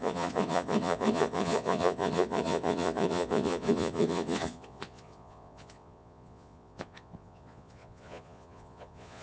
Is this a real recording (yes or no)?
no